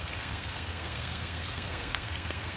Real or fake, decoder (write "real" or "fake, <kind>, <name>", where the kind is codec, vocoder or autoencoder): fake, codec, SNAC